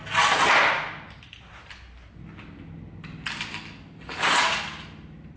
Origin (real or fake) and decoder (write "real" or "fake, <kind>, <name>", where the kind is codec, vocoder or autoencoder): real